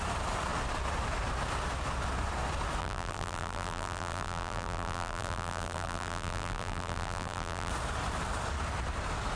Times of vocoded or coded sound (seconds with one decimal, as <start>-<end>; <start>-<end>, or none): 2.8-7.7